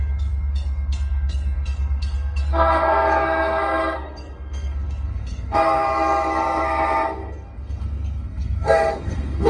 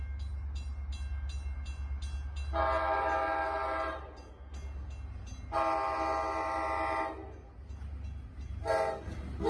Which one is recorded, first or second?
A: second